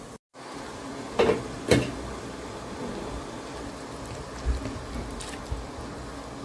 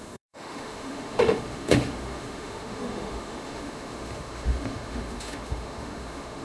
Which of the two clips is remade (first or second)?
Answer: second